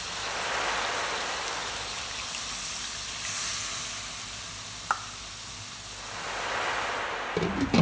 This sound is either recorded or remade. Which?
recorded